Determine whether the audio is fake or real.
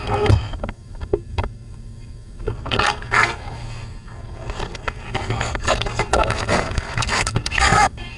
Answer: fake